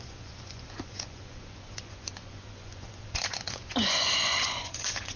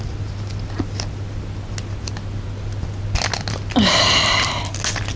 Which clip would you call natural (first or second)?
second